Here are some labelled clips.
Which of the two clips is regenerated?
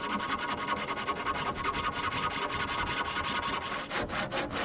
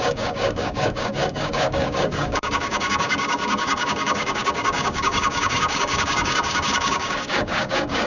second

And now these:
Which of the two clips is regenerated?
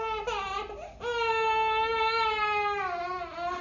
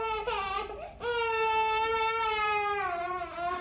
second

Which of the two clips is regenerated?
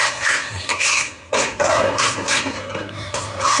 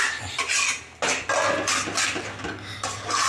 first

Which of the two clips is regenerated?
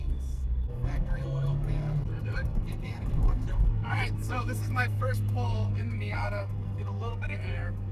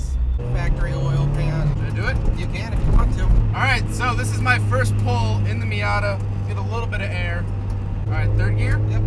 first